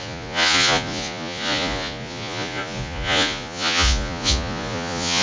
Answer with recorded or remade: remade